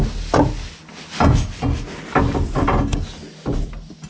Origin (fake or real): real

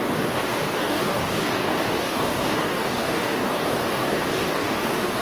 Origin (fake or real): fake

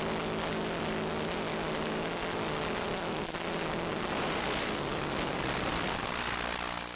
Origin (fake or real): real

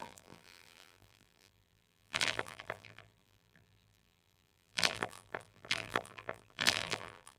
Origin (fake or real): fake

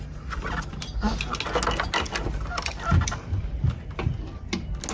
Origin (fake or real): real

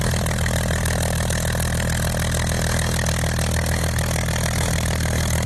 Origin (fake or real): real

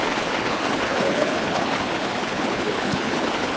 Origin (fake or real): fake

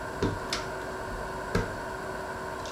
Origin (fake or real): real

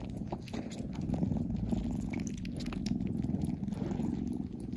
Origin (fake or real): real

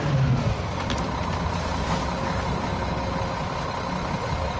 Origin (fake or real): real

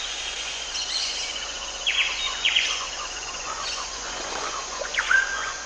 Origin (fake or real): fake